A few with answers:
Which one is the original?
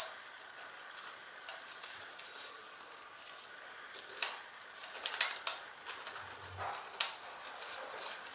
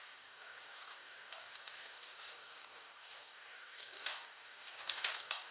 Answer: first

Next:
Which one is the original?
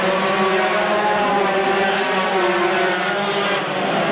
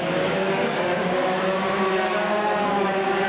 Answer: first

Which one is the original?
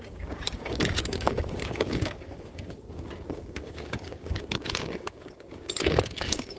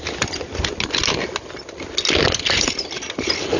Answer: second